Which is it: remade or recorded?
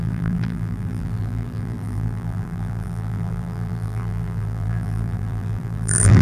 remade